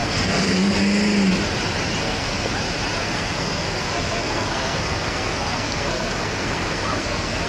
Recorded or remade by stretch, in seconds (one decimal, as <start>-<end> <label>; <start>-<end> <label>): 0.0-0.8 remade; 0.8-2.0 recorded; 2.0-2.5 remade; 2.5-3.0 recorded; 3.0-7.5 remade